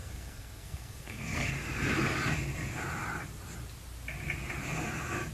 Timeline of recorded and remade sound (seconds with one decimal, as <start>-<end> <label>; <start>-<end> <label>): 0.0-1.5 remade; 1.5-5.3 recorded